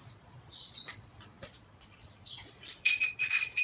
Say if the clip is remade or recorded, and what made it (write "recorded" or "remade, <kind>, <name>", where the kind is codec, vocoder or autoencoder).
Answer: remade, vocoder, Vocos